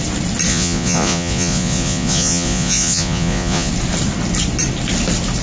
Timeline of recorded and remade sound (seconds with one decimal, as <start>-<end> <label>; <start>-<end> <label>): 0.0-0.5 recorded; 0.5-3.7 remade; 3.7-5.4 recorded